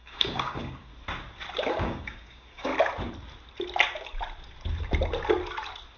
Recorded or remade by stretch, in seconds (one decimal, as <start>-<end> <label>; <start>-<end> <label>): 0.0-0.9 remade; 0.9-1.7 recorded; 1.7-2.7 remade; 2.7-6.0 recorded